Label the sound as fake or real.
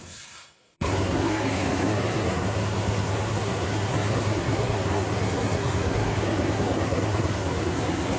fake